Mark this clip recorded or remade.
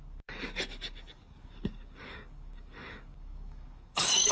remade